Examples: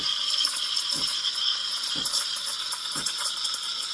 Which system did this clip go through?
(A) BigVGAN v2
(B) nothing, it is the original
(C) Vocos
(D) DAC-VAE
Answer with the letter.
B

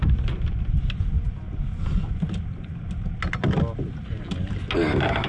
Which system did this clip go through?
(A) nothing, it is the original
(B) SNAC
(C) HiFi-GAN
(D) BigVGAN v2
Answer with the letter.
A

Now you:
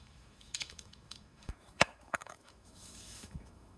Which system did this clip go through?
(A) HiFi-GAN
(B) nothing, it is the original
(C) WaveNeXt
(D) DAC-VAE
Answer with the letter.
D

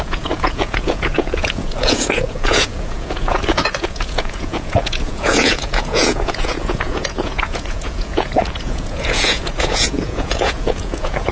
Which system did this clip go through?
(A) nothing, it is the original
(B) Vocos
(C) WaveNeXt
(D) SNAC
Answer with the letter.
B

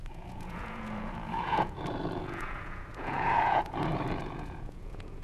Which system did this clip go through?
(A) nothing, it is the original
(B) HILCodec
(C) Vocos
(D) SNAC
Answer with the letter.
C